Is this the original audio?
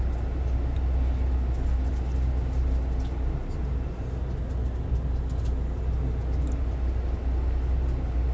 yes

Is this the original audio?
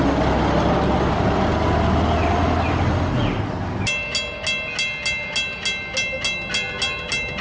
yes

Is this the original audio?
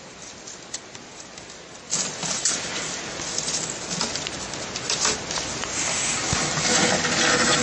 yes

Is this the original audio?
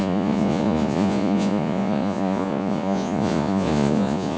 no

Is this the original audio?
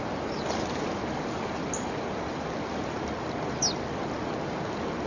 yes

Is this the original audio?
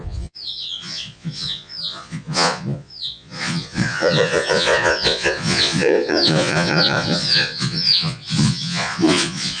no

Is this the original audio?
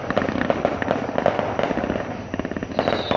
yes